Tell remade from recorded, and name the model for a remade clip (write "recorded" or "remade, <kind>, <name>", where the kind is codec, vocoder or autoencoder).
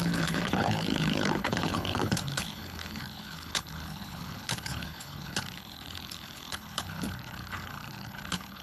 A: remade, codec, HILCodec